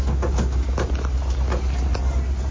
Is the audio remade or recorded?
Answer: recorded